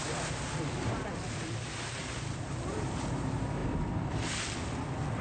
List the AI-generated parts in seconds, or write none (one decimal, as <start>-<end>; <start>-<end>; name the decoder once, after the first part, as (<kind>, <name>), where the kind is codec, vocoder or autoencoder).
0.0-3.1 (vocoder, BigVGAN v2)

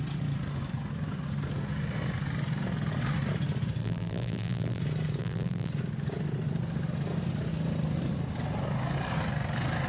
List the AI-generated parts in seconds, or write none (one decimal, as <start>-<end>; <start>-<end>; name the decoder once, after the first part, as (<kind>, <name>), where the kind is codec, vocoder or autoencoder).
3.8-4.8 (vocoder, BigVGAN v2); 5.2-5.7

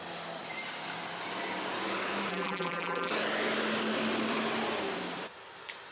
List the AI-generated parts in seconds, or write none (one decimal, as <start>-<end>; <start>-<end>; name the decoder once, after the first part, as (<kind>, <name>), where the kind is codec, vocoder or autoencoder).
2.3-3.1 (vocoder, BigVGAN v2)

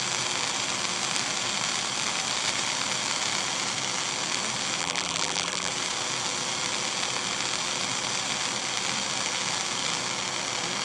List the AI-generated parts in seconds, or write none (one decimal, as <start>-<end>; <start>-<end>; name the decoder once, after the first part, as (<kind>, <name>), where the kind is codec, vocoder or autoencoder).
4.8-5.7 (vocoder, BigVGAN v2)

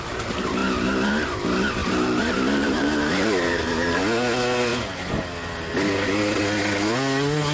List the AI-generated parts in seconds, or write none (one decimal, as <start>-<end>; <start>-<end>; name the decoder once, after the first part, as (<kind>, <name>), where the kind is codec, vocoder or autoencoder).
0.6-1.1 (vocoder, BigVGAN v2); 1.8-4.0

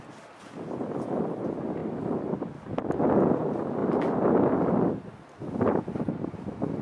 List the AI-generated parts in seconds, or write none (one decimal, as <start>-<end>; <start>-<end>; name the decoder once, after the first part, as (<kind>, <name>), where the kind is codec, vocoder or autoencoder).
1.8-2.7 (vocoder, BigVGAN v2)

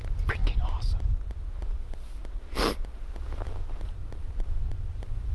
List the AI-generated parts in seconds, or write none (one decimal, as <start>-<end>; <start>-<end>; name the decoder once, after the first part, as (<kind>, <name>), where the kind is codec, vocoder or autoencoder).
3.6-4.2 (vocoder, BigVGAN v2)